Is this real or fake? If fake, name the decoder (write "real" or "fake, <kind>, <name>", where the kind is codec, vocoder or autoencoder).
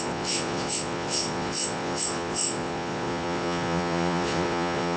fake, vocoder, Vocos